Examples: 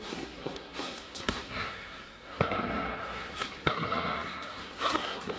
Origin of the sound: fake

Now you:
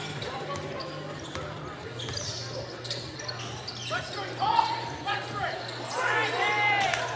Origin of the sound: real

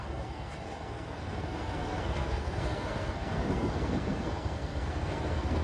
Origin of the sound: fake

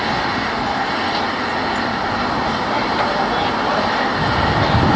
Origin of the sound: real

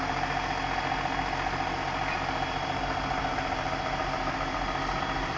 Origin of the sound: real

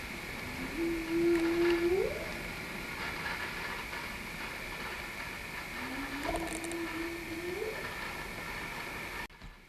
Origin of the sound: real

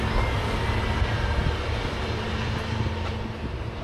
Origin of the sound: real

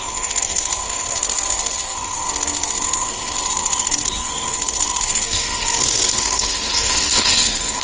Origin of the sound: fake